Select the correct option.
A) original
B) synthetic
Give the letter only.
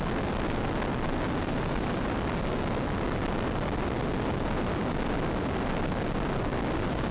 A